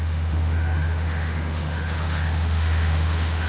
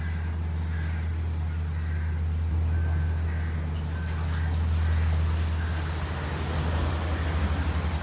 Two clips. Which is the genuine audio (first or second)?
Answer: second